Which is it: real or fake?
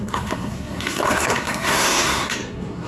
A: fake